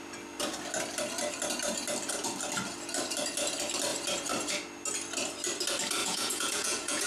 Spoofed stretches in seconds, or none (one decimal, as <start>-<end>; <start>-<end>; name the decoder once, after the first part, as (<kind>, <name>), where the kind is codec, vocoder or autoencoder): 6.0-7.1 (vocoder, Vocos)